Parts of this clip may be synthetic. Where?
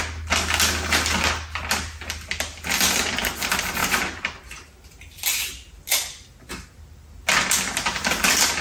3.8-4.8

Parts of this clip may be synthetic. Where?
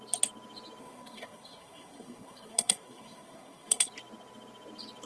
0.8-3.9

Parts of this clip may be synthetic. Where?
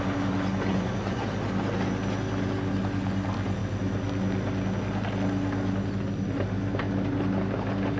0.7-1.2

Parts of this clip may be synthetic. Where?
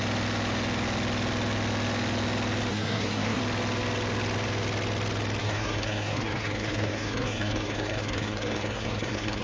2.7-3.4; 5.4-9.4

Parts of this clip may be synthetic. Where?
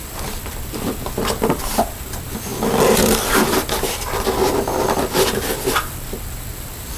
0.0-7.0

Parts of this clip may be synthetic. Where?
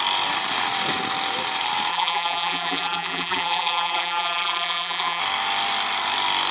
1.9-5.2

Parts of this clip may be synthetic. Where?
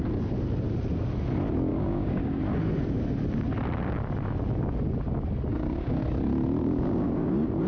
1.7-2.4; 5.5-6.0; 6.6-7.3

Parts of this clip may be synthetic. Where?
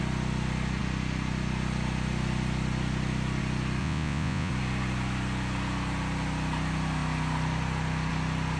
3.8-4.5